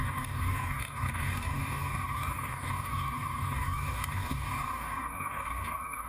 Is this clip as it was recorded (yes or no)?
no